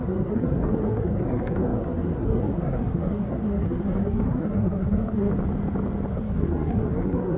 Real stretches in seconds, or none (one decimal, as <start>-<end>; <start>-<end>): 5.3-6.1